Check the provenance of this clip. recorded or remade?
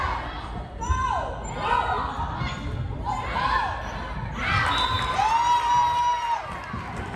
recorded